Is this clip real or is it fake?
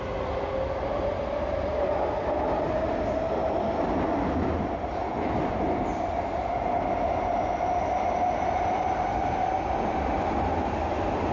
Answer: real